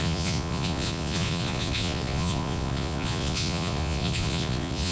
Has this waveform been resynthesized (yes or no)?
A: yes